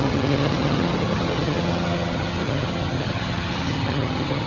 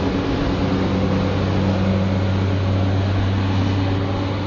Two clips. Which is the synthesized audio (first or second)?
first